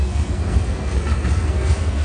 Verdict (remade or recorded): remade